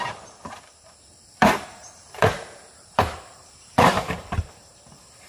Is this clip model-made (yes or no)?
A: yes